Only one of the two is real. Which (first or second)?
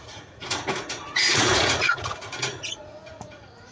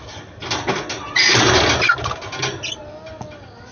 second